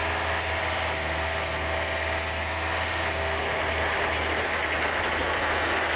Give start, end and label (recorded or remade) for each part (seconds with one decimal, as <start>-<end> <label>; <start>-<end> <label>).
0.0-6.0 recorded